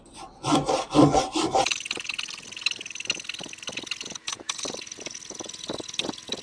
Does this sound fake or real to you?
real